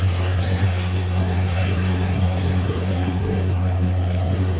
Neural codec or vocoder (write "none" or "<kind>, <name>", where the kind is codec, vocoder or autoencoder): codec, SNAC